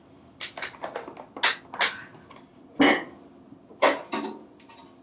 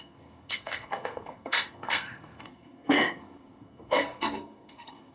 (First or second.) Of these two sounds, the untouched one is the first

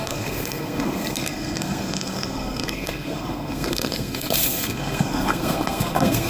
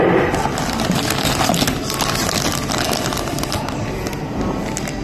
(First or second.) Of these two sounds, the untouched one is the second